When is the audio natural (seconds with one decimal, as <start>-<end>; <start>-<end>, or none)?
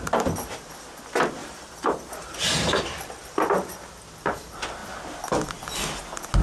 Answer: 0.0-1.4; 2.8-6.4